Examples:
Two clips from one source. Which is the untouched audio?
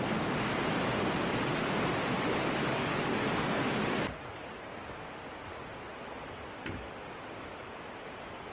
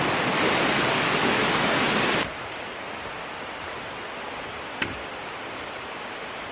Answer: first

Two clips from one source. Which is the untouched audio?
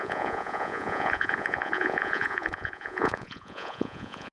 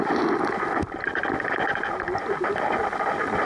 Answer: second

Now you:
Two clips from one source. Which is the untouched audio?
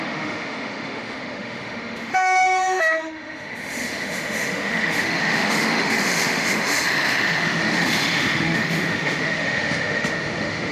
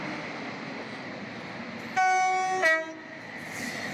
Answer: second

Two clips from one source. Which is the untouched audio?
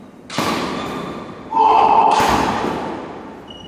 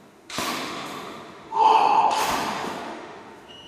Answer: first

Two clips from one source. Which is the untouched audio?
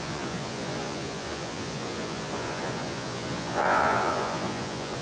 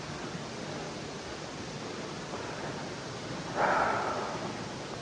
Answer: second